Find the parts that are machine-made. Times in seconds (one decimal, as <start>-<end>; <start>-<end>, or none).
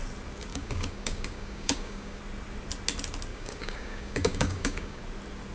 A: 0.5-2.2; 3.3-5.0